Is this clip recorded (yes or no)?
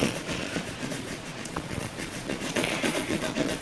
no